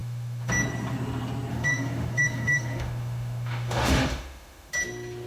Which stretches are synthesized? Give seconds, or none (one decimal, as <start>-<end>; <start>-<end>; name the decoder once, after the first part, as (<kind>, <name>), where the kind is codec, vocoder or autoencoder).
0.0-0.5 (autoencoder, DAC-VAE); 1.5-4.7